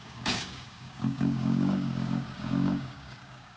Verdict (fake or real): fake